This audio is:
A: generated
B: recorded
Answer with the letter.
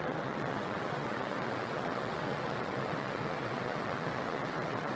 A